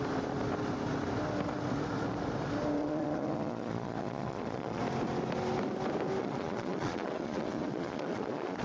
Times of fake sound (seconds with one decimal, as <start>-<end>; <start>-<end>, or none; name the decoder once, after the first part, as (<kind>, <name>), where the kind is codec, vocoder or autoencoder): 2.8-4.8 (vocoder, Vocos); 6.2-8.6